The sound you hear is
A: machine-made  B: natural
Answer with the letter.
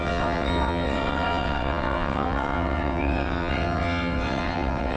A